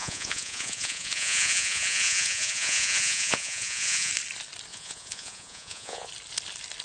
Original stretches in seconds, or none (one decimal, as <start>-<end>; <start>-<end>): 4.1-4.7; 6.1-6.8

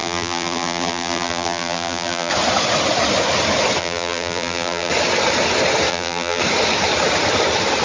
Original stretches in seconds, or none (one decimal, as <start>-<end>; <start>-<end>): 2.3-3.8; 4.9-5.9; 6.4-7.8

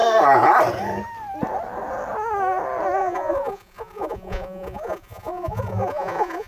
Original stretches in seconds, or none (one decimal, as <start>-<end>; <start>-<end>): 0.0-3.0

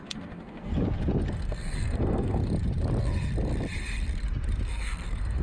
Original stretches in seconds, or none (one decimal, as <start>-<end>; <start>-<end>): 0.7-1.3; 2.4-4.7